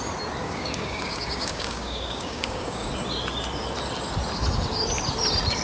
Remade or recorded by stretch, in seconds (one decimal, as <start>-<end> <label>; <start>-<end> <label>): 0.0-0.4 recorded; 0.4-2.9 remade; 2.9-5.6 recorded